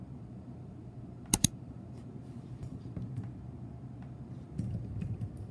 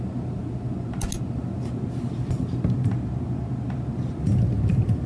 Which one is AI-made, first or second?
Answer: first